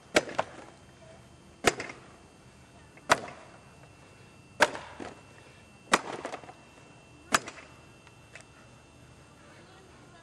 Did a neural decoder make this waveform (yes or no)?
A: no